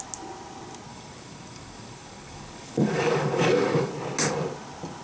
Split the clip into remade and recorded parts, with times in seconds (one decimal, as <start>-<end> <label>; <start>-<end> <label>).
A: 0.0-0.9 recorded; 0.9-3.9 remade; 3.9-5.0 recorded

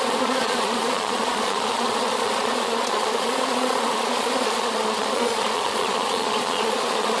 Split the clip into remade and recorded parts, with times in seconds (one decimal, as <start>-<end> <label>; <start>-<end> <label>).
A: 0.0-7.2 remade

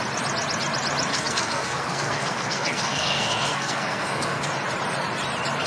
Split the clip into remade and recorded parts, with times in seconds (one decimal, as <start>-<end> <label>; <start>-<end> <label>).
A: 0.0-1.1 recorded; 1.1-4.5 remade; 4.5-5.7 recorded

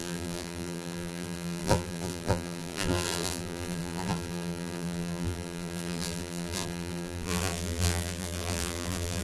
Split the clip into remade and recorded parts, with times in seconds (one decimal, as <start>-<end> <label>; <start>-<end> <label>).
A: 0.0-9.2 remade

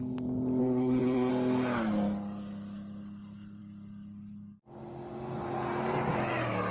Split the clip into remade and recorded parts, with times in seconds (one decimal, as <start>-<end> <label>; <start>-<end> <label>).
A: 0.0-0.6 recorded; 0.6-1.3 remade; 1.3-6.7 recorded